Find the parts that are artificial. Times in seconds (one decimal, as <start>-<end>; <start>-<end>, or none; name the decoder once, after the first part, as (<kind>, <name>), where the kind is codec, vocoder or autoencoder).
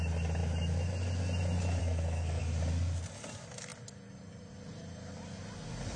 1.8-2.4 (codec, SNAC)